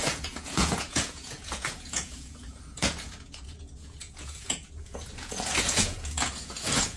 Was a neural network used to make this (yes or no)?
yes